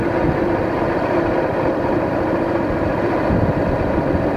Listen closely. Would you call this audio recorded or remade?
remade